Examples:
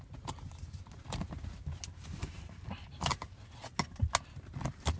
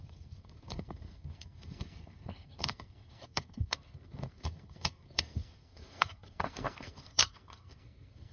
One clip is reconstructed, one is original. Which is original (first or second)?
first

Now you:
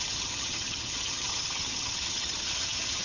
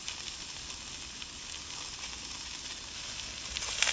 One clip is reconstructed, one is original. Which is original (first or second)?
second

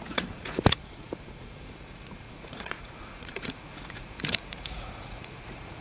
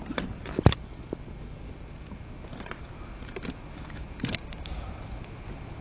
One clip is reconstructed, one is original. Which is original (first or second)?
second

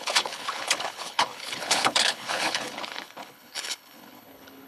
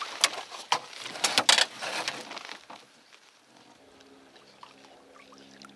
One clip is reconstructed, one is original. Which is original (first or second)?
second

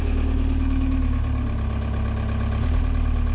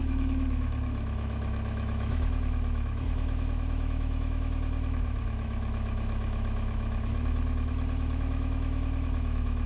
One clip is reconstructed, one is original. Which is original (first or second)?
first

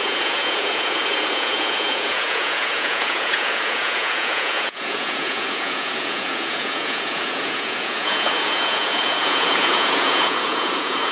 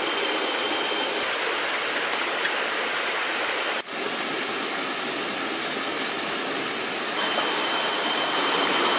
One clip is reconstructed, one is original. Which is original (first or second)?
second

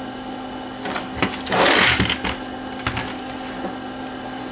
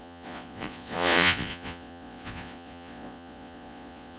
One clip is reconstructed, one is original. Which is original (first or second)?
first